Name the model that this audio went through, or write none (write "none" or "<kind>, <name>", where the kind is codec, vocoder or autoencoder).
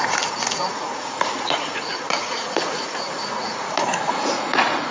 vocoder, Vocos